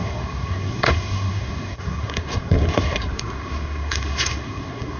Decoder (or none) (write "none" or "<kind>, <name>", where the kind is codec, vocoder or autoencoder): codec, SNAC